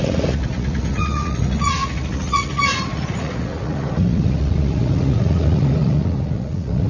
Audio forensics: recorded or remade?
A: remade